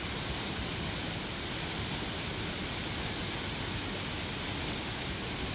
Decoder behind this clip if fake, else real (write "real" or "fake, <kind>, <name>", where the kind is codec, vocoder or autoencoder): real